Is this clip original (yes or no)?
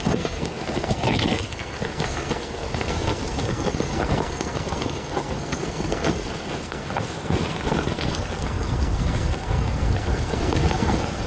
no